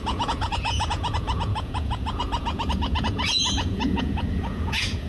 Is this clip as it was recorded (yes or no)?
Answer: no